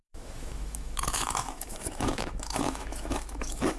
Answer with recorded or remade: remade